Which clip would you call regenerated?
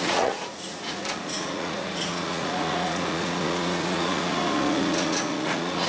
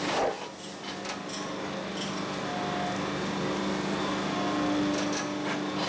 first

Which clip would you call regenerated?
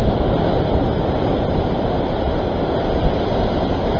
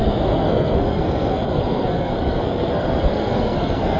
second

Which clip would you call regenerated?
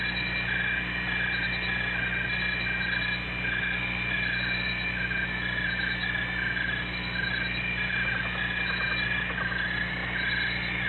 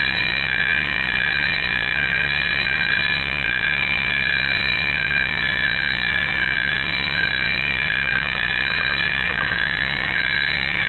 second